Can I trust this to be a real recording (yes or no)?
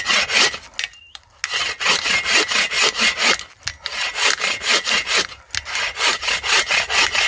yes